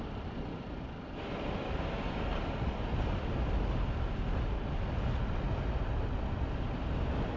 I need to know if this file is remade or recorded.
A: recorded